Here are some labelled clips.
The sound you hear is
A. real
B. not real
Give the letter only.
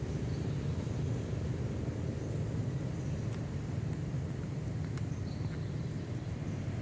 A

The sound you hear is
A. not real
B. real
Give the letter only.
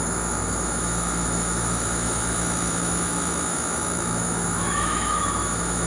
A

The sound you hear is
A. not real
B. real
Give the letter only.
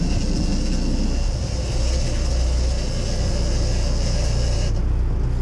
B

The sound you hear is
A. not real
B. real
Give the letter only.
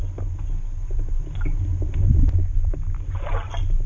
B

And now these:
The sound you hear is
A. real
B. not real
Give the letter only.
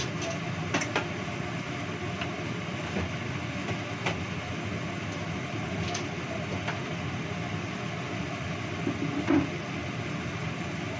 A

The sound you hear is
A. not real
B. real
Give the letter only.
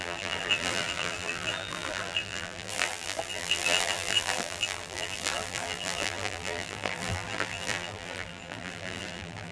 A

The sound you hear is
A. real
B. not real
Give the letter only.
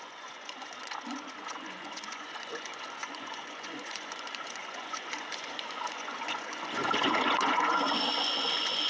B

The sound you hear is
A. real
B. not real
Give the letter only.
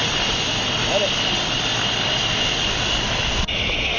A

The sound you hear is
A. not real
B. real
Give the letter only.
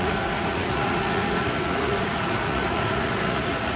A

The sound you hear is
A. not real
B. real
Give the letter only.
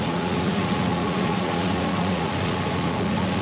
A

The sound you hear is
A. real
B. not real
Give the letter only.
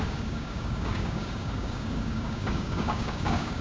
B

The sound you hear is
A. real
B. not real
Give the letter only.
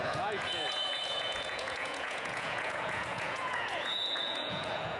B